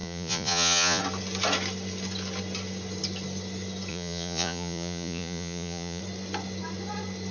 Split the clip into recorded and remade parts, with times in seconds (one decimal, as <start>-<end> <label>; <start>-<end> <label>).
0.0-1.0 remade; 1.0-3.9 recorded; 3.9-6.0 remade; 6.0-7.3 recorded